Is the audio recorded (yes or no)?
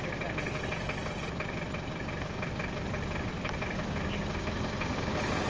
yes